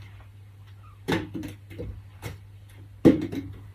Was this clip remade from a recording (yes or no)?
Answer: no